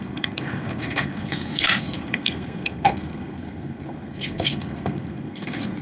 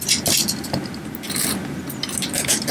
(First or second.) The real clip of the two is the second